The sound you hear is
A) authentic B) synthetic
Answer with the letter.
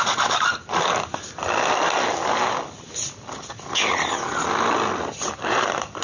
A